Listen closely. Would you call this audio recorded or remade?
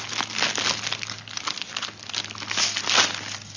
recorded